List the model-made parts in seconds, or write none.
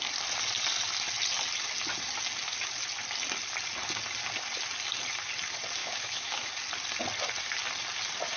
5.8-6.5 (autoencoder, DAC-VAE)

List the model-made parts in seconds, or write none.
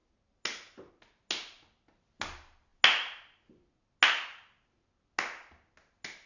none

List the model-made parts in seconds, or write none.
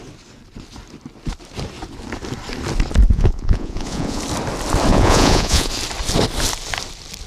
3.1-4.2 (vocoder, Vocos); 4.9-5.7